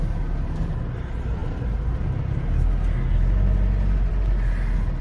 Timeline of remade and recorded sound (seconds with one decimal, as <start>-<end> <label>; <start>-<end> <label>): 0.0-5.0 recorded